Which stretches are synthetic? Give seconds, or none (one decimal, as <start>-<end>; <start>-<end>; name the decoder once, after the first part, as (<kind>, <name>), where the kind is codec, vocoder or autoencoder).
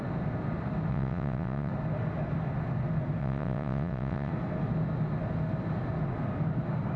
0.9-1.7 (vocoder, WaveNeXt); 3.2-4.3